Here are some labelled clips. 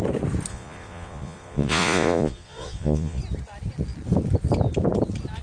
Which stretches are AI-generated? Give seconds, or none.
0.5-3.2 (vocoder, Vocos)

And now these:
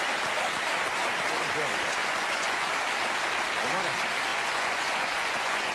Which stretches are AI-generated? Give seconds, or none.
2.0-2.7 (vocoder, Vocos); 4.3-5.7

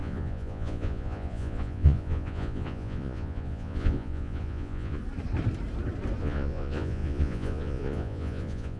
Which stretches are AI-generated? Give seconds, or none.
0.0-5.0 (vocoder, Vocos); 6.2-8.8

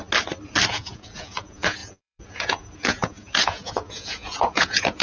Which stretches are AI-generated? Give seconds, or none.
0.7-5.0 (vocoder, Vocos)

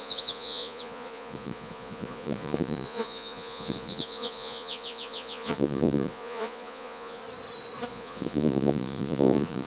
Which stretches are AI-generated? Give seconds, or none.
0.0-7.2 (vocoder, Vocos); 7.9-9.7

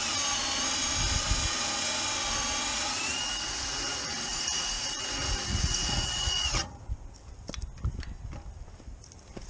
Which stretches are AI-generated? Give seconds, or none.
2.7-6.9 (vocoder, Vocos)

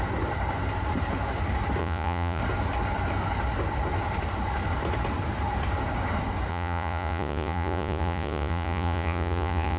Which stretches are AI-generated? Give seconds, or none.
1.8-2.4 (vocoder, Vocos); 6.5-9.8

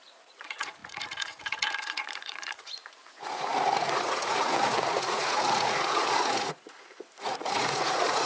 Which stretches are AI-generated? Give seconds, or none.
0.0-8.3 (vocoder, Vocos)